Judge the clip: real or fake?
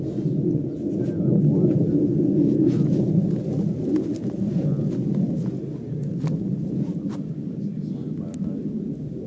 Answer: real